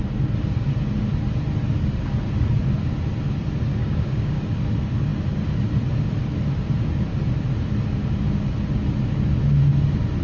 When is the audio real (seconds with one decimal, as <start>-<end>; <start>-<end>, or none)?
0.0-3.8; 4.4-10.2